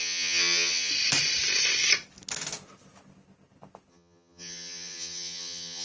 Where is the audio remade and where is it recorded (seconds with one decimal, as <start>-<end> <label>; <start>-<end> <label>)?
0.0-0.9 remade; 0.9-3.9 recorded; 3.9-5.8 remade